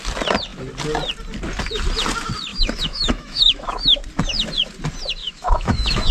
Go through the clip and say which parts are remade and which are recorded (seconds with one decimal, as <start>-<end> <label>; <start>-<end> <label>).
0.0-2.5 recorded; 2.5-4.0 remade; 4.0-5.2 recorded; 5.2-6.1 remade